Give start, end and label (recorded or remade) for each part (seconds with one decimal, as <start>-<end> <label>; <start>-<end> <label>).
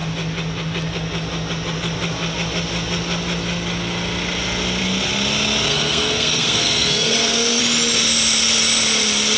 0.0-5.7 recorded; 5.7-7.6 remade; 7.6-9.4 recorded